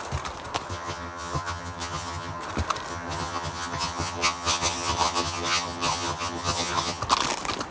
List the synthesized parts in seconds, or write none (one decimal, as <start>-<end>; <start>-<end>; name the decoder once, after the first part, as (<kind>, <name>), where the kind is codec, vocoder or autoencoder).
0.7-2.4 (vocoder, HiFi-GAN); 2.9-7.0